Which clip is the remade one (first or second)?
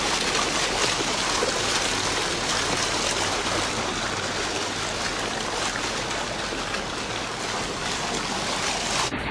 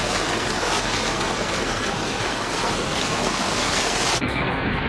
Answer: second